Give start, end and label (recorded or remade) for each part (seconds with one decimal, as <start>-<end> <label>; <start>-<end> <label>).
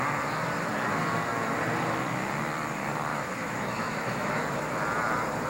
0.0-3.1 recorded; 3.1-4.4 remade; 4.4-5.5 recorded